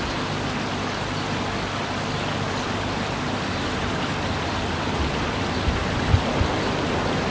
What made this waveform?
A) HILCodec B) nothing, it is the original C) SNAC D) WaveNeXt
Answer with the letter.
B